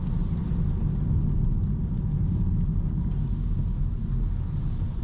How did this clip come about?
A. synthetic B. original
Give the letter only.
B